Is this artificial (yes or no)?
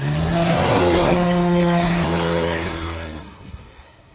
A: yes